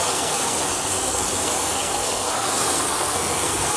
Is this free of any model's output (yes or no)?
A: no